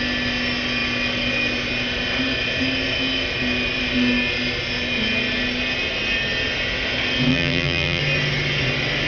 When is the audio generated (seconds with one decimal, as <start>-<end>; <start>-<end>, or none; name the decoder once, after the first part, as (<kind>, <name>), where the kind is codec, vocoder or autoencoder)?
7.3-8.0 (vocoder, BigVGAN v2)